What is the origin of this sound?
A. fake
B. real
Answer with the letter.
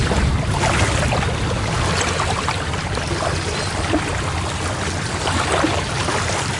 B